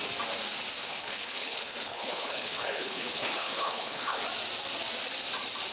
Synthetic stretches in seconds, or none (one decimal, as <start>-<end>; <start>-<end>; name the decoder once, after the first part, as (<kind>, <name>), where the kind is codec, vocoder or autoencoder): 0.8-4.2 (codec, HILCodec)